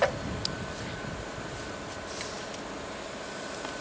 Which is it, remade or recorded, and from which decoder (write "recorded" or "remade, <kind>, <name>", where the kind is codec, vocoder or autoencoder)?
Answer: recorded